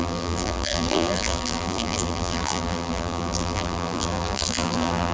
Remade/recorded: remade